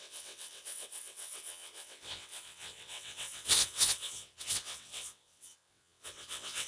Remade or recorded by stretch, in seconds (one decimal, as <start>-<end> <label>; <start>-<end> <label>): 0.0-6.7 remade